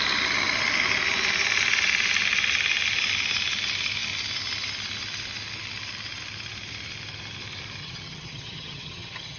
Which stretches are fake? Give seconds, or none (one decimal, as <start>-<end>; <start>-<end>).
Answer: 7.8-9.4